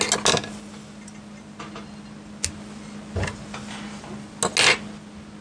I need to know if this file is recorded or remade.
recorded